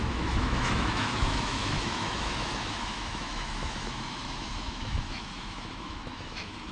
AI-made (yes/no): yes